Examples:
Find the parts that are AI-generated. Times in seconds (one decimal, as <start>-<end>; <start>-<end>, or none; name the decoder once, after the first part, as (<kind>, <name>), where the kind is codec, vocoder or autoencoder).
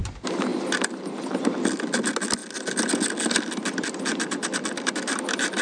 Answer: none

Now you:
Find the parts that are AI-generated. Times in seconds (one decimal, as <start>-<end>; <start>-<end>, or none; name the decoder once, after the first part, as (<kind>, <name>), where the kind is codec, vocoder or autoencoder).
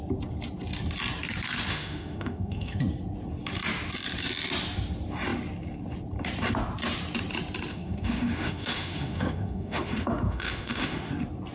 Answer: 1.7-2.8 (autoencoder, DAC-VAE); 7.7-11.1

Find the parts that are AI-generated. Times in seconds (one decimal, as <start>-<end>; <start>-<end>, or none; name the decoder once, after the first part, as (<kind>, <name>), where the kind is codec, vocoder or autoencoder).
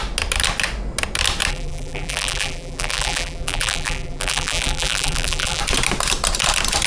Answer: 1.5-5.6 (vocoder, BigVGAN v2)